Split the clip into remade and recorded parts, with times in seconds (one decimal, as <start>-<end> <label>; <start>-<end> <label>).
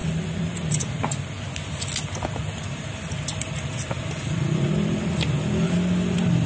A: 0.0-6.5 recorded